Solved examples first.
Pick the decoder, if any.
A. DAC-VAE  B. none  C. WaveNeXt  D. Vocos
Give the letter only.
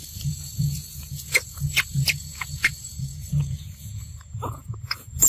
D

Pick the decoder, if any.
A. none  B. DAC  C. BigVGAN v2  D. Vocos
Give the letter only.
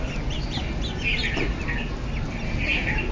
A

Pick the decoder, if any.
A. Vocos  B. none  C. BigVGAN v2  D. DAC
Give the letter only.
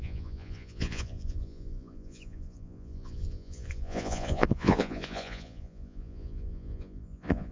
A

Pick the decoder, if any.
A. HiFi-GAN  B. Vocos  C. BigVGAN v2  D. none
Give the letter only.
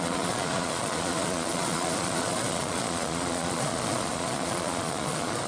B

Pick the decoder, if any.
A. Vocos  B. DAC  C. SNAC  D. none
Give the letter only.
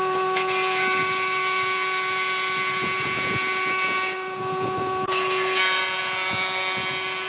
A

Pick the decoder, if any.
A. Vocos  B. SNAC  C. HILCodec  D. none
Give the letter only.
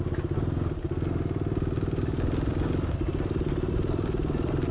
D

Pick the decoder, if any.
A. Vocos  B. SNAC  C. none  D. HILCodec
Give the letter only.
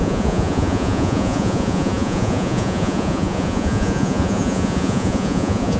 A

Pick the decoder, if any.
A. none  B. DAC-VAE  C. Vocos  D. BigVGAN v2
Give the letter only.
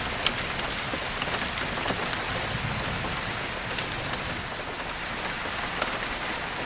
A